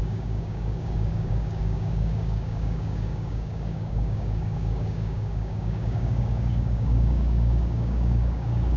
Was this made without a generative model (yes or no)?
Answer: no